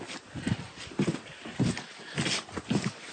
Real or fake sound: real